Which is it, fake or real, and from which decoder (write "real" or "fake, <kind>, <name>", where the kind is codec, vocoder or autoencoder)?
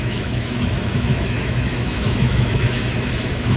fake, autoencoder, DAC-VAE